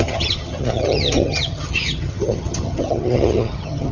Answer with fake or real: fake